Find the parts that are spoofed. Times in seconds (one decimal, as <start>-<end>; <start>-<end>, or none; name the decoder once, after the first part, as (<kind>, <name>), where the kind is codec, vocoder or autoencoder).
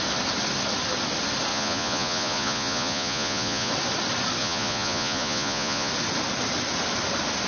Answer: 1.5-3.7 (vocoder, Vocos); 4.4-5.9